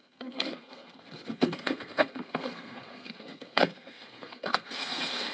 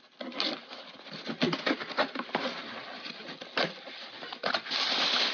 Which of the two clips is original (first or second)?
second